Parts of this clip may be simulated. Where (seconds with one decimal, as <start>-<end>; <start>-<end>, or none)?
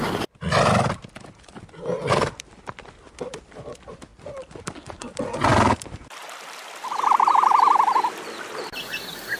none